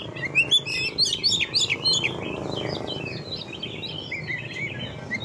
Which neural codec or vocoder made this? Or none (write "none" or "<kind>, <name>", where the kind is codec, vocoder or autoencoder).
none